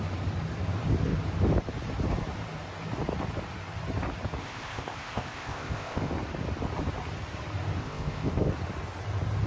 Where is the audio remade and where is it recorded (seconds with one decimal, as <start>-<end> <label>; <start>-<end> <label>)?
0.0-4.4 recorded; 4.4-6.1 remade; 6.1-7.8 recorded; 7.8-8.5 remade; 8.5-9.5 recorded